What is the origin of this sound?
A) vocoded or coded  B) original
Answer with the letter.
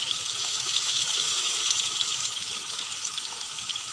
A